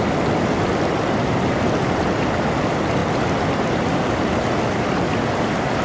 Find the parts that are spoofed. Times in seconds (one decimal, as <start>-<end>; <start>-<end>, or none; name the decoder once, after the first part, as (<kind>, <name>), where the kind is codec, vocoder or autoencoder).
none